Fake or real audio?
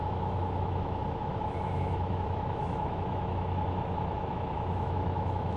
fake